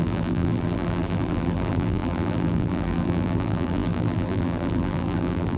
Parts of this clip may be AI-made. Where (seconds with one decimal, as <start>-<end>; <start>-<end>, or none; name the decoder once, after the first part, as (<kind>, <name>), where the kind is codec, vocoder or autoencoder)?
0.0-5.6 (vocoder, BigVGAN v2)